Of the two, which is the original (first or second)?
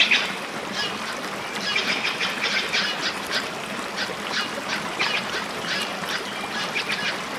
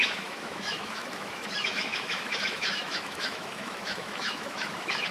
first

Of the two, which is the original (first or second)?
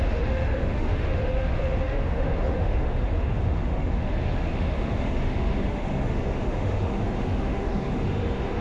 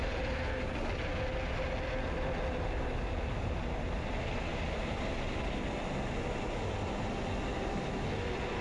second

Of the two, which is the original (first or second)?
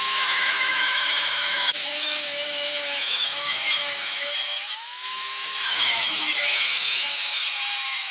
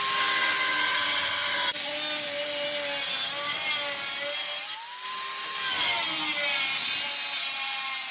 second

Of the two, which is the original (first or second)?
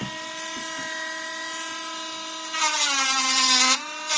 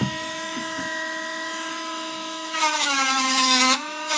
first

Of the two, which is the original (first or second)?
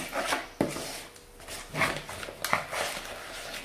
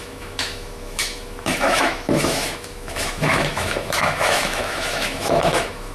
first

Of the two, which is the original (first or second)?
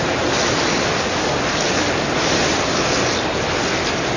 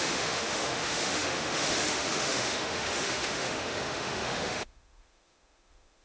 first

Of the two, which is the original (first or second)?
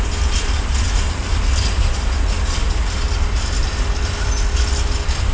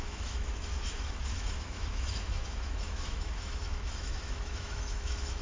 first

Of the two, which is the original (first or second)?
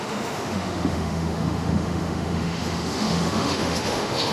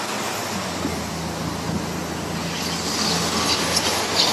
second